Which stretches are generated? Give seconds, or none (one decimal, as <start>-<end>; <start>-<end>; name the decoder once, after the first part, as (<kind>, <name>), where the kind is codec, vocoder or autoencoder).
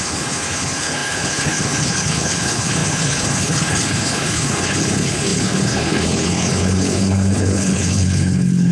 0.0-8.7 (codec, HILCodec)